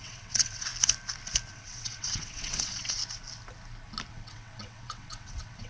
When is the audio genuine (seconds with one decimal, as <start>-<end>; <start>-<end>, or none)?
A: 0.7-1.5; 3.0-4.1